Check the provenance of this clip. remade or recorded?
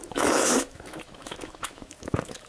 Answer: remade